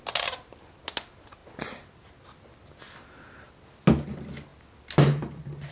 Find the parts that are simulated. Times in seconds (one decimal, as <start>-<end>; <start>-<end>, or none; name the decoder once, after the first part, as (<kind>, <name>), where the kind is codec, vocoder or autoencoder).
none